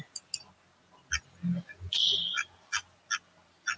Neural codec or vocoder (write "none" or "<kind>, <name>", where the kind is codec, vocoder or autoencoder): none